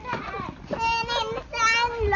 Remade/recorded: recorded